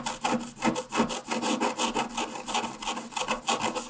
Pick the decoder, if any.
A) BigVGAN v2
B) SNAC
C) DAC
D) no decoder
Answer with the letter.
D